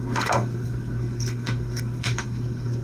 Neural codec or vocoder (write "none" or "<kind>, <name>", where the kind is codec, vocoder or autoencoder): codec, SNAC